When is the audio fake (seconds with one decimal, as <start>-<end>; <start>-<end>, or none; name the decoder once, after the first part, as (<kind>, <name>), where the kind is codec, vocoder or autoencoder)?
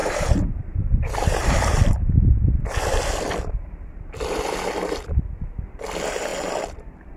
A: 0.0-1.8 (vocoder, BigVGAN v2)